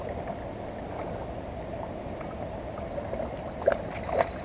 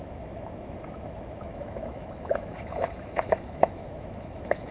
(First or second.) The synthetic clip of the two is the second